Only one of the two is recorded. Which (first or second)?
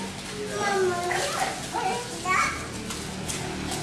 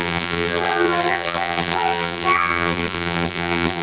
first